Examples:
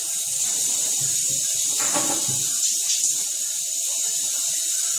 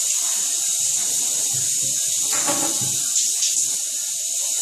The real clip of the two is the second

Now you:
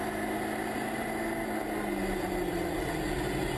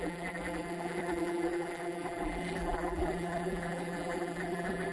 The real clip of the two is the first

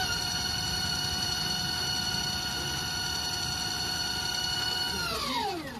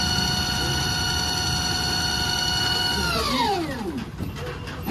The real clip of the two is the second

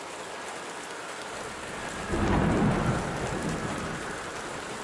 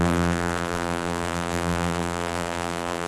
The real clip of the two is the first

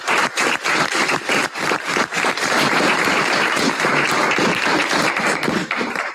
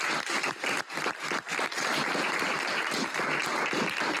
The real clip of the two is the second